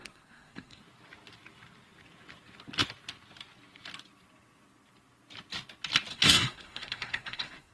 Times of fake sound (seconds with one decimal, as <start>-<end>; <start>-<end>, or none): 0.0-0.8; 6.1-7.7